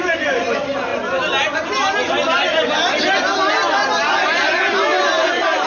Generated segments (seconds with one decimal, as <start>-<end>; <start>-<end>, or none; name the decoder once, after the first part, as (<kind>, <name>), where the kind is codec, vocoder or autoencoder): 0.0-0.9 (vocoder, BigVGAN v2); 2.9-5.7